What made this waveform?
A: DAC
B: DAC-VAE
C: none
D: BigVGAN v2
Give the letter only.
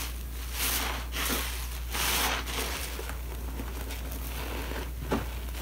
C